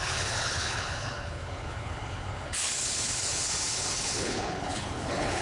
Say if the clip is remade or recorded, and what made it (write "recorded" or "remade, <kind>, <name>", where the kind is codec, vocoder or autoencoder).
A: remade, codec, HILCodec